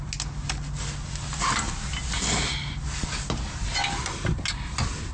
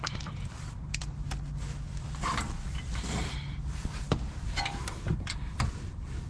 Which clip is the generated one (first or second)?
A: second